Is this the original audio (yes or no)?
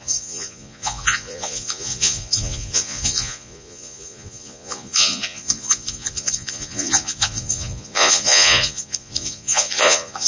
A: no